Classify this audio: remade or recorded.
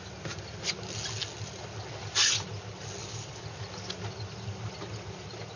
recorded